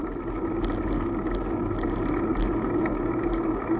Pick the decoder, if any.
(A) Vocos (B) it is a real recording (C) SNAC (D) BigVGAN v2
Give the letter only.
B